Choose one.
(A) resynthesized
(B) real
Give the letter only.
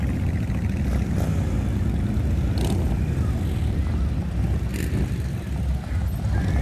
B